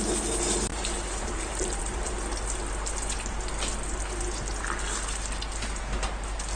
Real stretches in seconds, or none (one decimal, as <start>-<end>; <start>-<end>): 0.0-0.8; 2.1-6.6